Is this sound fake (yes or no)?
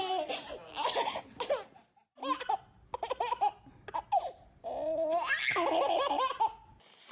no